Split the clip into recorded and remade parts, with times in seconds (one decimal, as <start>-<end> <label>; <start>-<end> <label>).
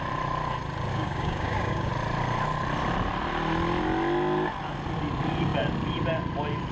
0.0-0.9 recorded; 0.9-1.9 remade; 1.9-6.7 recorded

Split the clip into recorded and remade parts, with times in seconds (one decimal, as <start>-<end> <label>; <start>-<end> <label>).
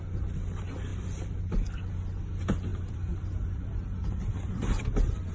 0.0-0.9 recorded; 0.9-1.9 remade; 1.9-2.7 recorded; 2.7-5.3 remade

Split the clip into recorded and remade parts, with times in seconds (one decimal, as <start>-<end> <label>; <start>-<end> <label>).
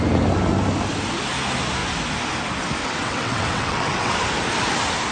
0.0-2.8 recorded; 2.8-4.1 remade; 4.1-5.1 recorded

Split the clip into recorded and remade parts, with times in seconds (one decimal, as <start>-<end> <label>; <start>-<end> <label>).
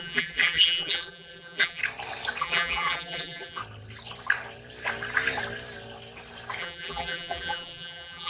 0.0-1.8 remade; 1.8-2.4 recorded; 2.4-3.6 remade; 3.6-6.6 recorded; 6.6-8.3 remade